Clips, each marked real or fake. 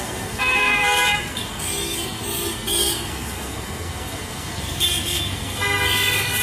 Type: fake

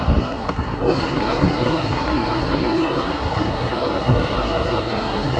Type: fake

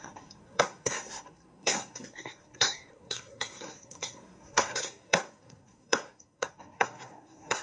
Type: fake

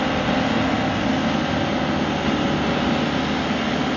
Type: real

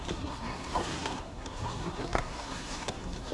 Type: fake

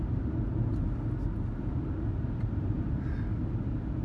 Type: real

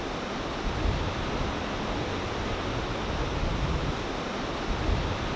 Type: real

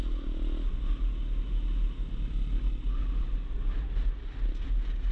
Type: real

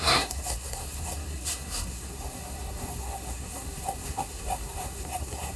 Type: fake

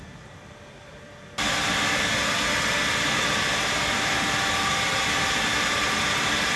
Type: real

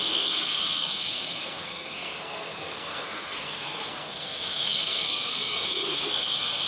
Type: fake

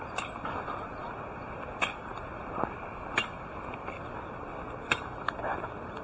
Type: real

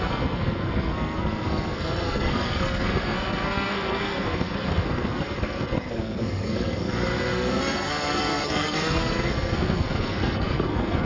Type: fake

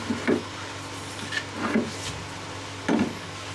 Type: real